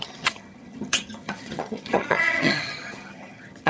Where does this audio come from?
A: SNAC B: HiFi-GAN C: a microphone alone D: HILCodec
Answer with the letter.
B